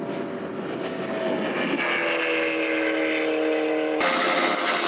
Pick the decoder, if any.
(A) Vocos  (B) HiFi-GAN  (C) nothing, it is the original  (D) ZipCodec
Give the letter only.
C